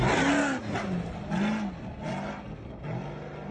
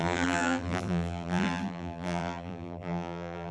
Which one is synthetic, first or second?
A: second